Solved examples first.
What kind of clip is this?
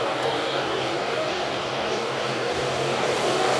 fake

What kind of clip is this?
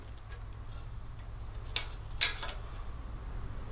real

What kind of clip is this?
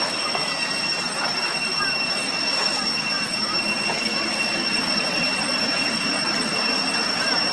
real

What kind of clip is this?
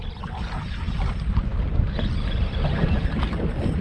real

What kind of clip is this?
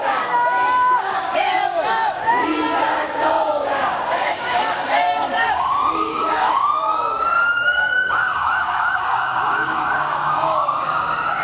fake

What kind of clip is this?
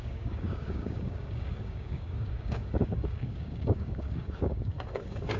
fake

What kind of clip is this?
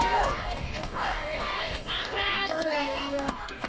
fake